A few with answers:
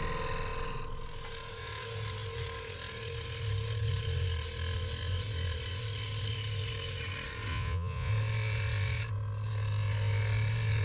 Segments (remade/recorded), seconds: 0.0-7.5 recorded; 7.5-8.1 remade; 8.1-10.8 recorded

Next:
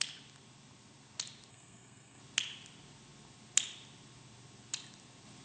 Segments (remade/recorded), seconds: 0.0-1.5 recorded; 1.5-2.2 remade; 2.2-5.4 recorded

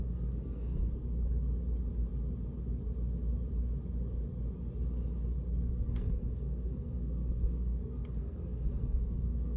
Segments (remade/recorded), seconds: 0.0-0.8 remade; 0.8-5.7 recorded; 5.7-9.6 remade